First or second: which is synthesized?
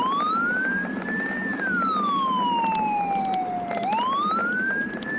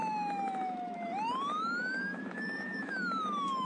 second